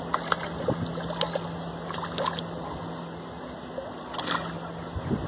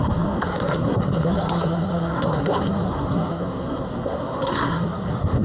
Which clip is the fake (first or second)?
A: second